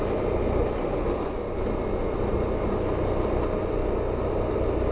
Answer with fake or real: real